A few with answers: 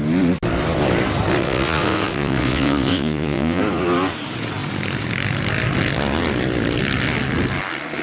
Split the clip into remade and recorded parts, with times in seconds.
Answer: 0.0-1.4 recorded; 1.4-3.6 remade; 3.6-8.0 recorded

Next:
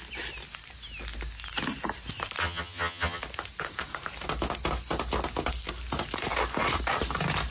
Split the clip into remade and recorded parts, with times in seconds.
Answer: 0.0-2.4 recorded; 2.4-3.2 remade; 3.2-7.5 recorded

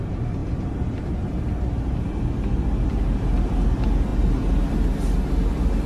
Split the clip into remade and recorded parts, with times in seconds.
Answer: 0.0-5.9 recorded

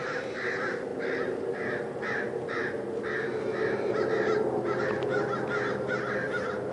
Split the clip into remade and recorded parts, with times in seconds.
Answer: 0.0-6.7 recorded

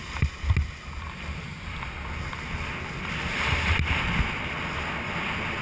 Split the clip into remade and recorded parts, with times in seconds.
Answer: 0.0-5.6 recorded

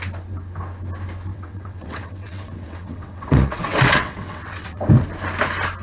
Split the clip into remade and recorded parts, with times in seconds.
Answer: 0.0-1.3 recorded; 1.3-4.8 remade; 4.8-5.8 recorded